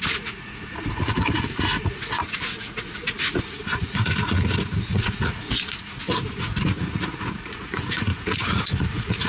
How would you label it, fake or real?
fake